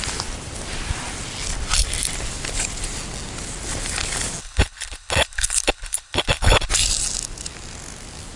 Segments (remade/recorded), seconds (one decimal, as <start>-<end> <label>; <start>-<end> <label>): 0.0-4.4 recorded; 4.4-6.7 remade; 6.7-8.4 recorded